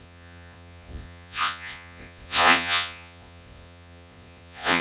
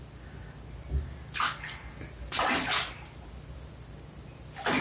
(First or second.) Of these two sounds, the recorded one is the second